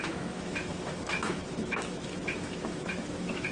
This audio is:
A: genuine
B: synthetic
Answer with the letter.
B